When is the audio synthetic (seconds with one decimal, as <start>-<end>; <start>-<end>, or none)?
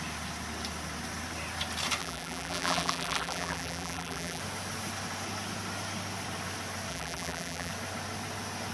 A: 2.0-4.4; 6.9-7.7